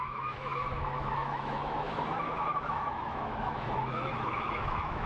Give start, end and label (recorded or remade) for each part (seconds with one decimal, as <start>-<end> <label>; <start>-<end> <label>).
0.0-5.1 remade